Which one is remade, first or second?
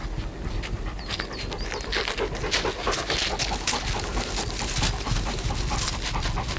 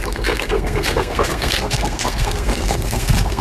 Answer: second